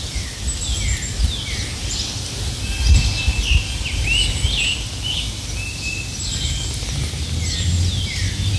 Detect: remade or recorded recorded